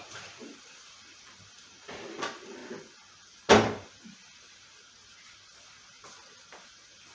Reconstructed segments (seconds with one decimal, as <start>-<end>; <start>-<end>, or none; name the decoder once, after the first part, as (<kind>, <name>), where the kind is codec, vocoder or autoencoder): 0.0-2.6 (vocoder, BigVGAN v2)